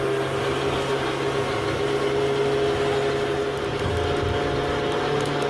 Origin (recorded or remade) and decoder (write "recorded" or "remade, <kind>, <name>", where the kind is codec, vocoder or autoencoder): recorded